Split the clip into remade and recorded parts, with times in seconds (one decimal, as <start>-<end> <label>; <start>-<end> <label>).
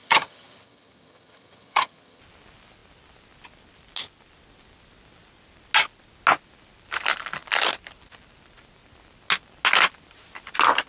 0.0-2.2 remade; 2.2-10.9 recorded